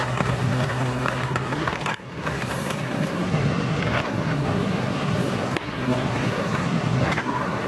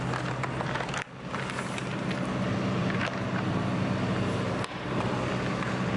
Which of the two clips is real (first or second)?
second